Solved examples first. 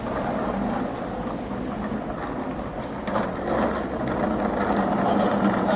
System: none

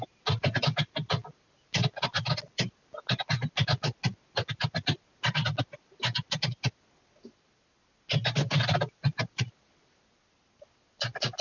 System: none